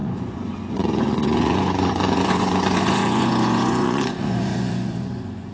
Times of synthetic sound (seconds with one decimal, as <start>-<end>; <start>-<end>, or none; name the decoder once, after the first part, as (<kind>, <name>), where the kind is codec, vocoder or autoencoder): 0.0-5.5 (vocoder, Vocos)